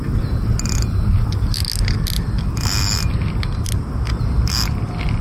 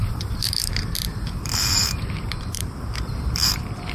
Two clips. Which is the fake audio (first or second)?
second